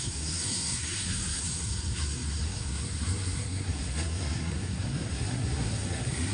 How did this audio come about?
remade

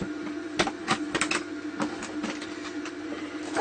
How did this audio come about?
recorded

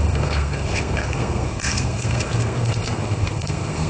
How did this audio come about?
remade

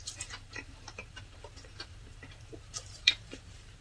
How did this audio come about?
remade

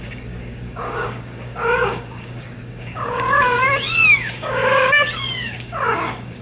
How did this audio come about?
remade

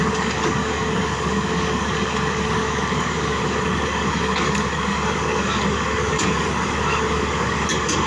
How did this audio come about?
remade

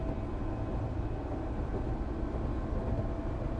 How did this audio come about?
recorded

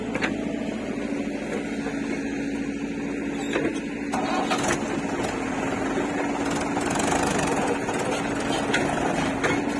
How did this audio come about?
recorded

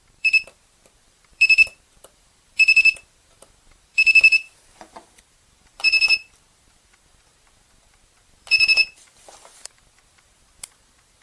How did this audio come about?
remade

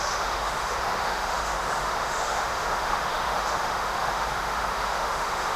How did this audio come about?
remade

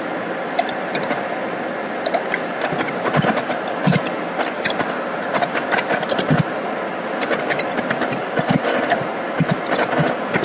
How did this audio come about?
recorded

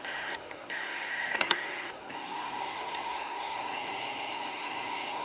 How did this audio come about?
remade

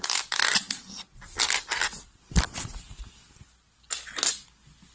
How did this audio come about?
recorded